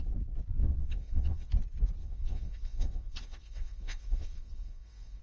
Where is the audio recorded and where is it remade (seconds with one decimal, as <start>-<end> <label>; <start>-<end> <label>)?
0.0-0.6 recorded; 0.6-1.5 remade; 1.5-2.0 recorded; 2.0-5.2 remade